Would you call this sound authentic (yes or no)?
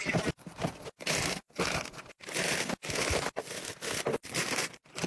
yes